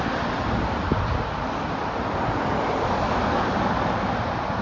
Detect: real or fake real